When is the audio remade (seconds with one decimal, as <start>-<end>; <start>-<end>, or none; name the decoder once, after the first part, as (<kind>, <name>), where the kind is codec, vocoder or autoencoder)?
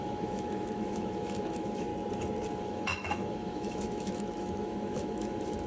0.0-1.9 (autoencoder, DAC-VAE); 2.5-5.7